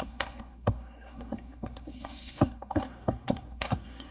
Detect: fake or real fake